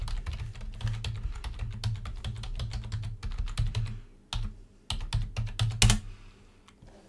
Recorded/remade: recorded